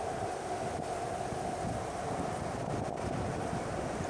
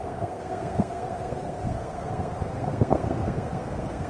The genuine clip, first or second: first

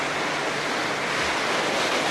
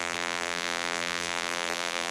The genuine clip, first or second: first